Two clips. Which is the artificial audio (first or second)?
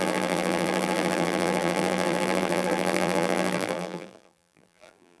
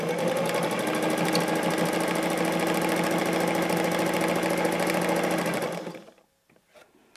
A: first